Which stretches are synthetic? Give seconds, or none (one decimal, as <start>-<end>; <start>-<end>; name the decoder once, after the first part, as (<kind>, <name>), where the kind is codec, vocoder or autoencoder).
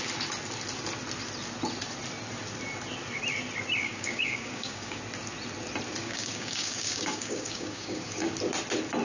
3.8-5.0 (codec, DAC); 6.0-8.3